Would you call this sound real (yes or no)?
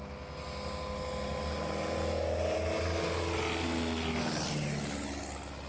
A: yes